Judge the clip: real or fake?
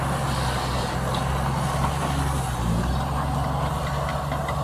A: real